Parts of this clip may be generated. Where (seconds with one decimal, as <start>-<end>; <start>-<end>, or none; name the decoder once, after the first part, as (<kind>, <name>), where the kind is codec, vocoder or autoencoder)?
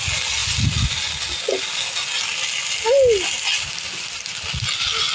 none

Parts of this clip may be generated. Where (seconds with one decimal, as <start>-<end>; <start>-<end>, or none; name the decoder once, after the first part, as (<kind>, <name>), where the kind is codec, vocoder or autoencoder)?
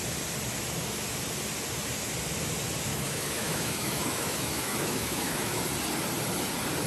2.9-5.6 (autoencoder, DAC-VAE)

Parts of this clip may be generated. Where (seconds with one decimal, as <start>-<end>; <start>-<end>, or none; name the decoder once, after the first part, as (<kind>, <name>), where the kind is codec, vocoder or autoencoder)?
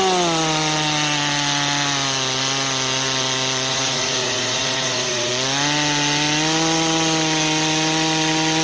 3.7-5.3 (vocoder, Vocos)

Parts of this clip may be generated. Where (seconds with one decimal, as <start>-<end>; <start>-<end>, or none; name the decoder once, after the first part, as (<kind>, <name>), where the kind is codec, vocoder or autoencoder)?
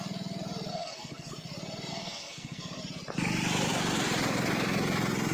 0.7-1.3 (codec, SNAC); 1.9-2.8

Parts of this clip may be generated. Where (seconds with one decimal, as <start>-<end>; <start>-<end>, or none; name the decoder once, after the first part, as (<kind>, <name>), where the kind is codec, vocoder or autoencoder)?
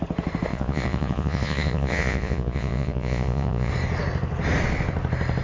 0.5-3.7 (vocoder, Vocos)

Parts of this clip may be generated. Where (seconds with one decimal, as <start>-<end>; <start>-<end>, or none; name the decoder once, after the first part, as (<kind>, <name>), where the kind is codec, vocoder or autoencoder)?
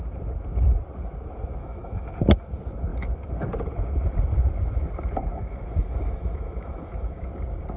1.6-2.1 (autoencoder, DAC-VAE); 5.3-7.3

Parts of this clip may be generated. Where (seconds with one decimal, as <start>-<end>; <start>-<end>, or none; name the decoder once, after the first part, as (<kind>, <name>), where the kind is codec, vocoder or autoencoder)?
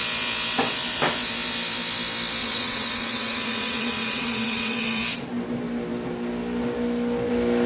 2.4-5.0 (vocoder, WaveNeXt)